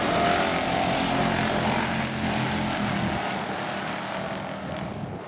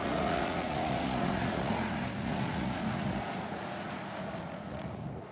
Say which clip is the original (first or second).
first